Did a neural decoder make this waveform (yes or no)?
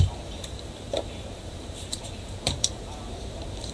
yes